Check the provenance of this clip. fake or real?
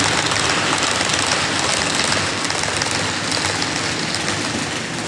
real